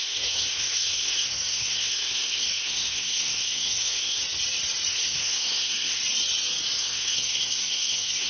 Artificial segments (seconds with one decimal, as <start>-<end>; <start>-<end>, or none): 0.0-4.2; 4.9-6.0; 6.8-8.3